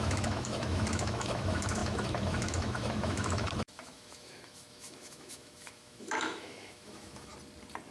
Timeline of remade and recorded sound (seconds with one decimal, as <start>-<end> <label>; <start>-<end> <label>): 0.0-7.3 remade; 7.3-7.9 recorded